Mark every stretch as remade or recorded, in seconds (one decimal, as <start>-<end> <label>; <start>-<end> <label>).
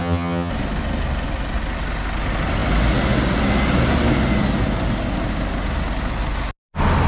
0.0-0.5 remade; 0.5-7.1 recorded